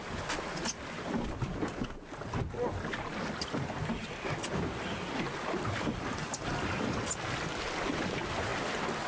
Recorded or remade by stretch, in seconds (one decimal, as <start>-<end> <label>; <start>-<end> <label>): 0.0-9.1 recorded